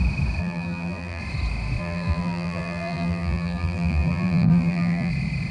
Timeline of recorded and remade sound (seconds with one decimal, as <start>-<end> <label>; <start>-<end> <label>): 0.0-0.4 recorded; 0.4-1.2 remade; 1.2-1.8 recorded; 1.8-5.1 remade; 5.1-5.5 recorded